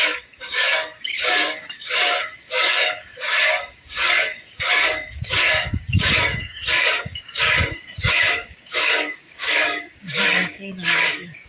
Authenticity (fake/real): fake